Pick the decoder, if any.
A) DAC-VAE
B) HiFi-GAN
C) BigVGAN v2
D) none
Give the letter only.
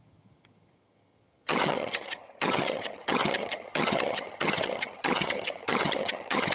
B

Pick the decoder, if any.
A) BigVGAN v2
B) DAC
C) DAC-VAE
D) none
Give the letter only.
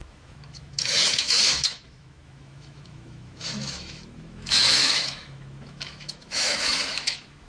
C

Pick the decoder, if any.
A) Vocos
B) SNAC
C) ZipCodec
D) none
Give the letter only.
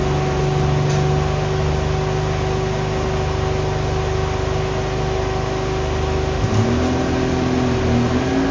D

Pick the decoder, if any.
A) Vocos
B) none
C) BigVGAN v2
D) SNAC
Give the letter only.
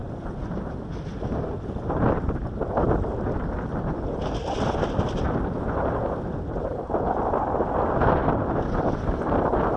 B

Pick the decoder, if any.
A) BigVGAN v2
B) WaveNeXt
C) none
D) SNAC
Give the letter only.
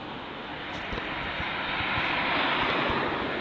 C